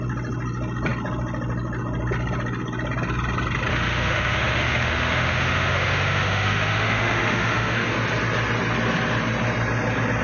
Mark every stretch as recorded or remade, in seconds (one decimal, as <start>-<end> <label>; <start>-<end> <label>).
0.0-3.7 recorded; 3.7-7.9 remade; 7.9-10.2 recorded